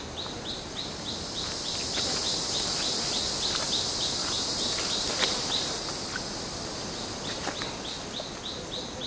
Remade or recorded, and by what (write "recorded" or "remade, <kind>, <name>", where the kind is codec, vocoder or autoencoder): recorded